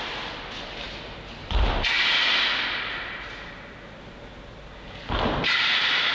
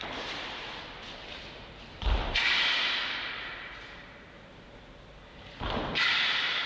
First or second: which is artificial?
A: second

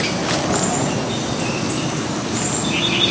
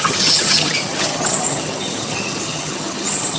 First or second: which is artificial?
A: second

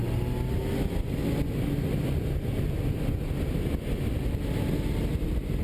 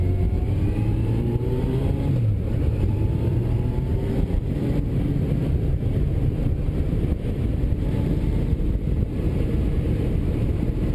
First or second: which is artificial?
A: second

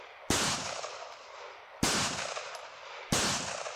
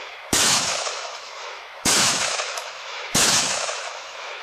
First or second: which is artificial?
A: second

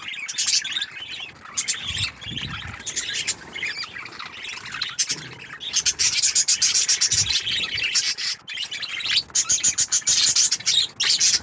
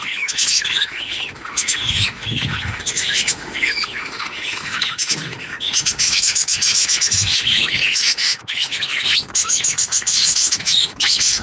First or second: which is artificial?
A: second